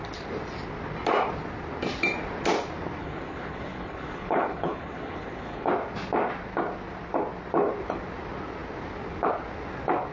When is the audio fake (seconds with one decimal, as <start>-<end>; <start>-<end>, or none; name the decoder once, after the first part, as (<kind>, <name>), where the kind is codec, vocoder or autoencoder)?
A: 3.0-5.7 (codec, HILCodec)